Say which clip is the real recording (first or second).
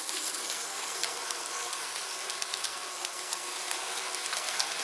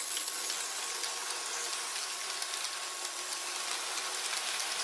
second